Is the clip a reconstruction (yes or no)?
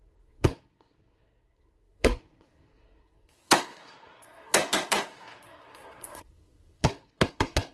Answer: yes